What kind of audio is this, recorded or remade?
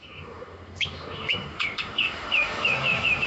remade